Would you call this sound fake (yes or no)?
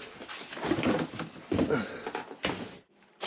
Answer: no